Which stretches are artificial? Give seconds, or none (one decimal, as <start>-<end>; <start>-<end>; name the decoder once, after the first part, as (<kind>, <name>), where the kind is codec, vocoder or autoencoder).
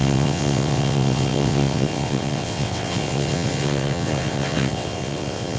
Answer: 0.0-5.6 (vocoder, WaveNeXt)